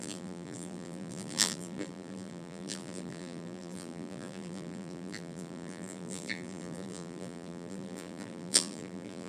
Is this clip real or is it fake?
fake